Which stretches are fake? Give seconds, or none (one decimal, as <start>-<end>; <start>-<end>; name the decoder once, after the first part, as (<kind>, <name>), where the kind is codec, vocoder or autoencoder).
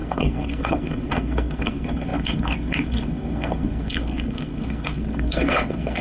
0.0-6.0 (codec, SNAC)